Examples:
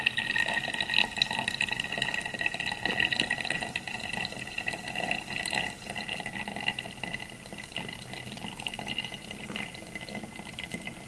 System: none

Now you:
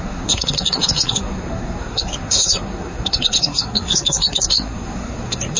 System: codec, SNAC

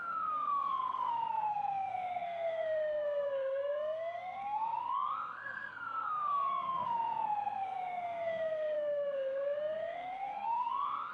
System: codec, SNAC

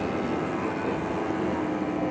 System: none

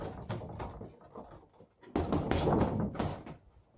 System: none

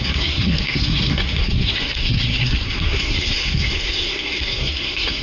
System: codec, SNAC